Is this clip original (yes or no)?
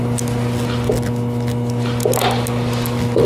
yes